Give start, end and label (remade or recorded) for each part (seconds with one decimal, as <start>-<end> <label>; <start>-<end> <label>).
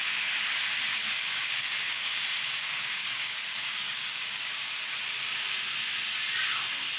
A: 0.0-0.9 recorded; 0.9-4.7 remade; 4.7-7.0 recorded